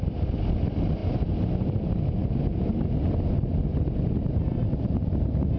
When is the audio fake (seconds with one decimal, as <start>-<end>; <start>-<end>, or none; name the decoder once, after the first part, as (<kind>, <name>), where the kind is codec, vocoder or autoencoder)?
none